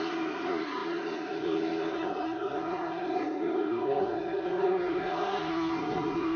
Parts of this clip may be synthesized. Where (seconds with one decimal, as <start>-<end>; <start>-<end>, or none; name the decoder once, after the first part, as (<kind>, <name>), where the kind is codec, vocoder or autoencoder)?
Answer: 0.0-6.4 (codec, SNAC)